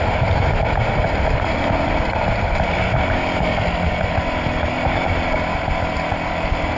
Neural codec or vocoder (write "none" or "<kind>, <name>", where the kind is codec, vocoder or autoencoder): none